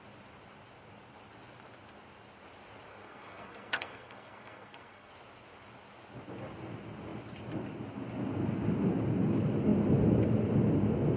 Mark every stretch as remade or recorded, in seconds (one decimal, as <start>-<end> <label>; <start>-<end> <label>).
0.0-2.9 recorded; 2.9-5.1 remade; 5.1-11.2 recorded